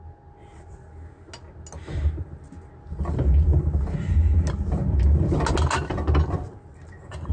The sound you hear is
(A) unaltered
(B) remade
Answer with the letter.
A